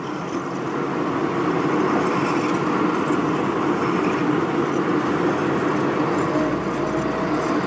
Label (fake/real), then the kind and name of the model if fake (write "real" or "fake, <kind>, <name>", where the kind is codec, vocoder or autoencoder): real